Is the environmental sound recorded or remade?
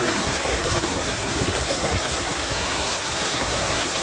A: remade